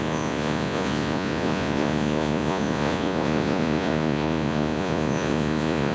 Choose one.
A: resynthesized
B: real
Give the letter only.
A